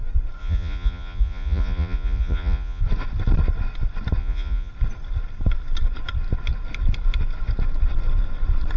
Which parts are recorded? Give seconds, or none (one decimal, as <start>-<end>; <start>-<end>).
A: 0.0-0.4; 2.8-4.2; 4.7-8.8